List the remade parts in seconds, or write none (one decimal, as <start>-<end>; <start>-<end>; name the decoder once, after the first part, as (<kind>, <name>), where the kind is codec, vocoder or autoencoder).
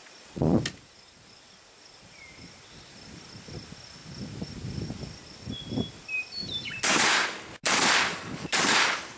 0.0-0.6 (vocoder, Vocos)